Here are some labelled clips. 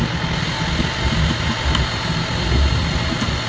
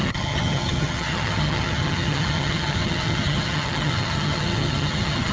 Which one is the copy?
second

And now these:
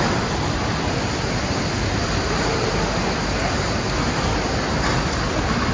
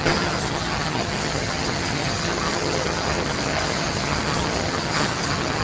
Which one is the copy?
second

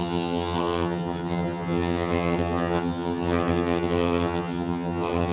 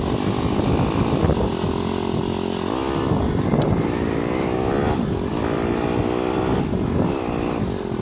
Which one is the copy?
first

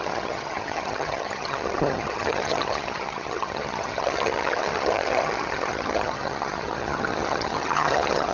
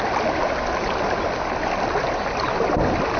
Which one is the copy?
first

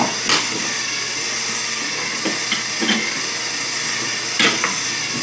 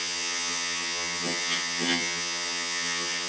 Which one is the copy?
second